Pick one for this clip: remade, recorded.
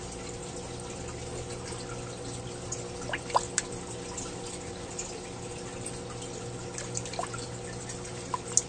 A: recorded